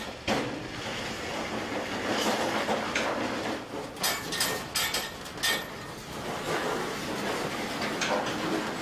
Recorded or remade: recorded